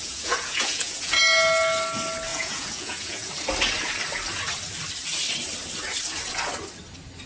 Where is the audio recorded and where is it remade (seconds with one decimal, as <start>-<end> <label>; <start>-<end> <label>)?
0.0-1.2 remade; 1.2-2.3 recorded; 2.3-3.3 remade; 3.3-7.3 recorded